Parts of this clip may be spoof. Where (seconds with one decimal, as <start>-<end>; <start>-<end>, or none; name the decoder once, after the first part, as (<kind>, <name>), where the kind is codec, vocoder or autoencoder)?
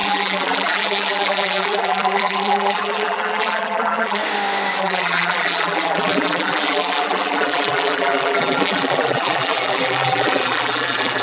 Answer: 0.0-4.2 (vocoder, BigVGAN v2); 4.8-11.2